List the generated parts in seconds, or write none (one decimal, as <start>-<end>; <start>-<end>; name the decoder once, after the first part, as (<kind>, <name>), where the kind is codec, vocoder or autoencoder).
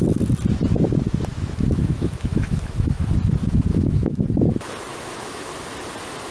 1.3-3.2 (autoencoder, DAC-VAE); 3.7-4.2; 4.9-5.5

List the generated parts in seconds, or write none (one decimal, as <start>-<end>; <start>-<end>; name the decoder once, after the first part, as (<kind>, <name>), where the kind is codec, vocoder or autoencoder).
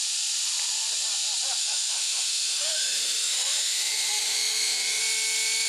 1.6-5.0 (autoencoder, DAC-VAE)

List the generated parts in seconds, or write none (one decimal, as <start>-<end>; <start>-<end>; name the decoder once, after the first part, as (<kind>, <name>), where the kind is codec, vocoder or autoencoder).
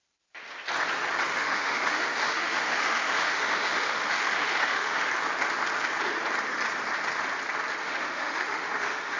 1.3-5.1 (autoencoder, DAC-VAE); 7.8-9.2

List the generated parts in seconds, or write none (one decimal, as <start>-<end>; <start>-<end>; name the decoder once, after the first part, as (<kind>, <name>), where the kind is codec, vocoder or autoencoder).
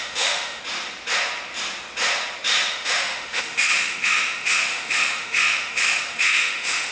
0.0-0.6 (autoencoder, DAC-VAE); 2.7-6.9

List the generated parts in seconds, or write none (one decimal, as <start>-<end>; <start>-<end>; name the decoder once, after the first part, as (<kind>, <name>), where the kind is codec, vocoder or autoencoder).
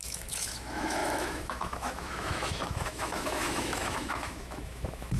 0.0-5.2 (autoencoder, DAC-VAE)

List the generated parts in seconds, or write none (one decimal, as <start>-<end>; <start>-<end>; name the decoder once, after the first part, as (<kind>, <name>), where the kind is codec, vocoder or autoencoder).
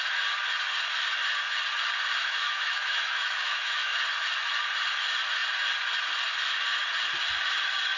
2.2-4.0 (autoencoder, DAC-VAE)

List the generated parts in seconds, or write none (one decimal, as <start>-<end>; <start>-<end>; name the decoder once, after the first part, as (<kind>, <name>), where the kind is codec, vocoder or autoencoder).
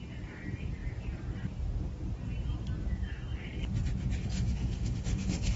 4.2-5.6 (autoencoder, DAC-VAE)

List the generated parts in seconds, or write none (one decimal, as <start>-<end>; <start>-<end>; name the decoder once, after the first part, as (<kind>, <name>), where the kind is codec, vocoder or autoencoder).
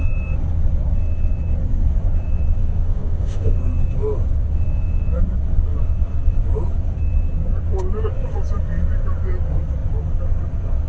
2.6-3.6 (autoencoder, DAC-VAE)